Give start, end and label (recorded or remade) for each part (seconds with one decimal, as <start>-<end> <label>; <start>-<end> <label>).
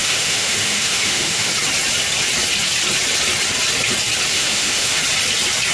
0.0-1.5 remade; 1.5-4.3 recorded; 4.3-5.0 remade; 5.0-5.7 recorded